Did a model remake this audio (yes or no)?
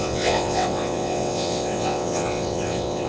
yes